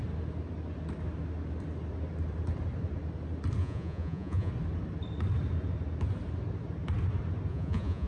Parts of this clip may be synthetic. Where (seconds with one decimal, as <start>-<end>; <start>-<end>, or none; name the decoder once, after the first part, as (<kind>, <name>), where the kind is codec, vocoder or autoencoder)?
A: 3.6-4.5 (vocoder, Vocos); 7.5-8.1

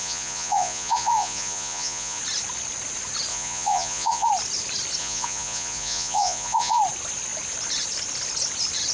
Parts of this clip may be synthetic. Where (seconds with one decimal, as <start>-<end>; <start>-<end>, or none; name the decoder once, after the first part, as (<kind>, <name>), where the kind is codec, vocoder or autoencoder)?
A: 0.0-2.2 (vocoder, Vocos); 3.3-4.3; 5.0-6.8

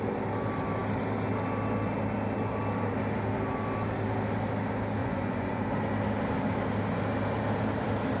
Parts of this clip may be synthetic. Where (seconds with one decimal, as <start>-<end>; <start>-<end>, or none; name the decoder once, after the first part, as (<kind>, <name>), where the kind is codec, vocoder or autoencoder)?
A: 5.0-5.6 (vocoder, Vocos)

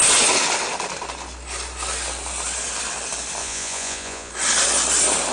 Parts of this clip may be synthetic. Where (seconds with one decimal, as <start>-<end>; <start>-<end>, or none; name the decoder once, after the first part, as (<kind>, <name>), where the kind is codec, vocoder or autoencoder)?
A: 3.4-4.3 (vocoder, Vocos)

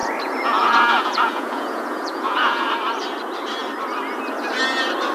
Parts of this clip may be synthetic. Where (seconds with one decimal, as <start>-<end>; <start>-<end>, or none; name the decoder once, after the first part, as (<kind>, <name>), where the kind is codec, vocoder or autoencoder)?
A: 0.0-2.7 (vocoder, Vocos)

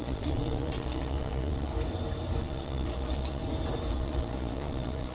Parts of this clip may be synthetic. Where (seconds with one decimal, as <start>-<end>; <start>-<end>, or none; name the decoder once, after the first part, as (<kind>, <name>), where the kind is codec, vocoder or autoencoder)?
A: 0.0-1.7 (vocoder, Vocos); 2.4-3.4; 3.9-5.1